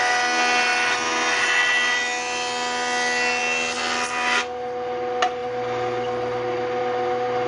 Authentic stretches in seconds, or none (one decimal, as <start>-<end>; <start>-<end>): 0.0-7.5